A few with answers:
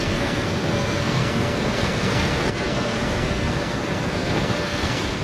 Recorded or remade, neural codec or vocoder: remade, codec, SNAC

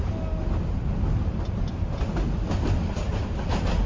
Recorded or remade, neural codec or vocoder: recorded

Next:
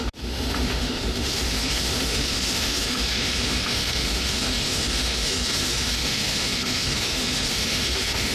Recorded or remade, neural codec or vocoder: remade, autoencoder, DAC-VAE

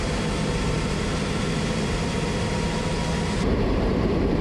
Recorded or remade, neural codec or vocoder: remade, vocoder, BigVGAN v2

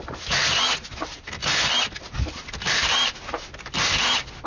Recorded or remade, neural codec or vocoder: recorded